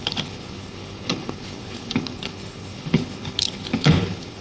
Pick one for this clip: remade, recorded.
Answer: remade